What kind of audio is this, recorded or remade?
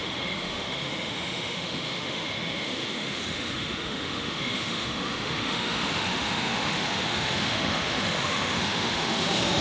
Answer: remade